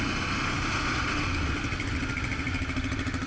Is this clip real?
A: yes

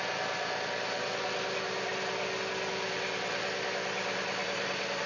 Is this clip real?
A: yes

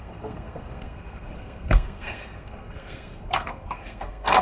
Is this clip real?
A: no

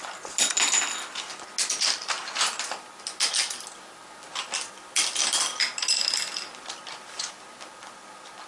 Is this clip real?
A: yes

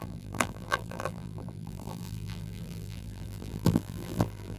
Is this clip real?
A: no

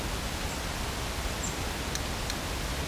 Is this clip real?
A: yes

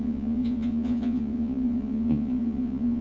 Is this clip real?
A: no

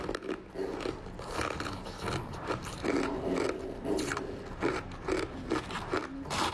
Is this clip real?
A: yes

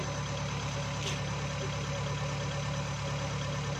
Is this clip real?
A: yes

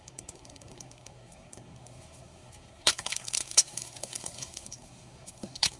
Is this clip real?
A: no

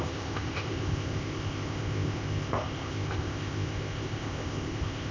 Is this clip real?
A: no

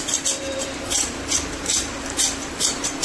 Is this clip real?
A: yes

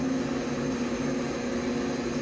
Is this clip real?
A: yes